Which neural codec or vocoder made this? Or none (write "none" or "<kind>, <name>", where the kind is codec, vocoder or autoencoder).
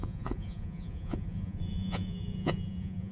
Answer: vocoder, Vocos